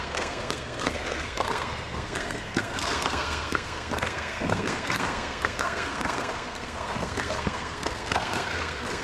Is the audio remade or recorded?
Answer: remade